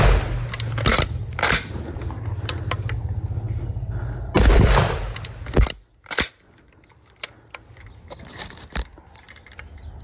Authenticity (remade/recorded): recorded